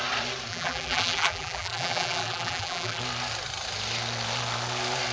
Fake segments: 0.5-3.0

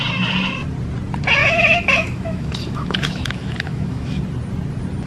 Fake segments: 1.4-4.2

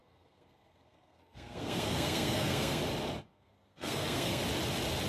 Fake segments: 0.0-2.8; 3.3-4.4

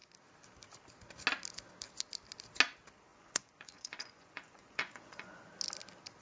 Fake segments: 3.1-5.5